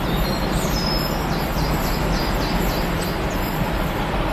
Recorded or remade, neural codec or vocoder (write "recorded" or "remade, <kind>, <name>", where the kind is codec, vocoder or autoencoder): recorded